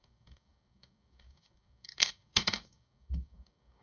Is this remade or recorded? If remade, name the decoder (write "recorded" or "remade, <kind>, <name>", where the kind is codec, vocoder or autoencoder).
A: remade, codec, DAC